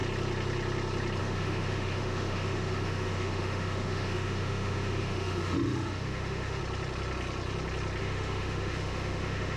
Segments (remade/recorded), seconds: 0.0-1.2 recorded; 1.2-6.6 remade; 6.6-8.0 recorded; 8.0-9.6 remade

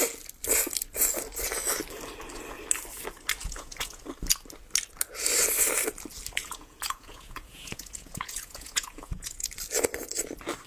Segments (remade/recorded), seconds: 0.0-3.4 recorded; 3.4-4.0 remade; 4.0-6.4 recorded; 6.4-9.5 remade; 9.5-10.7 recorded

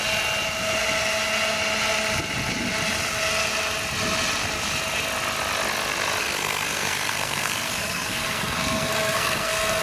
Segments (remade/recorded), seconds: 0.0-6.2 recorded; 6.2-9.8 remade

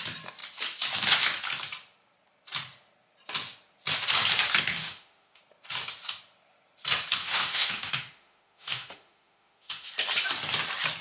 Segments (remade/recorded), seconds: 0.0-4.7 recorded; 4.7-5.4 remade; 5.4-7.2 recorded; 7.2-9.9 remade; 9.9-11.0 recorded